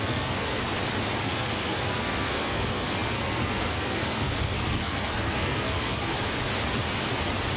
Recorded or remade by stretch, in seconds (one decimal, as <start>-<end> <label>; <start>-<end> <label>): 0.0-0.6 remade; 0.6-1.2 recorded; 1.2-6.1 remade; 6.1-7.6 recorded